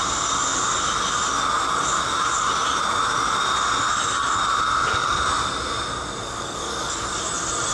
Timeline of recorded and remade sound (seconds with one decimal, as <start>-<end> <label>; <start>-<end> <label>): 0.0-6.2 recorded; 6.2-7.2 remade; 7.2-7.7 recorded